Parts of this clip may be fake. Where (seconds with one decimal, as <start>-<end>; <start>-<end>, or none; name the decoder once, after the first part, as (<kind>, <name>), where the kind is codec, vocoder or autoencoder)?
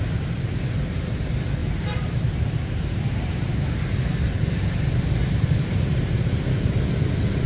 1.6-4.3 (vocoder, BigVGAN v2); 5.2-6.2